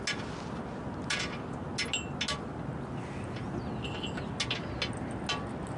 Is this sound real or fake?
real